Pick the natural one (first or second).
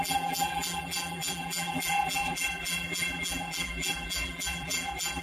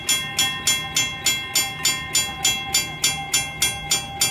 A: second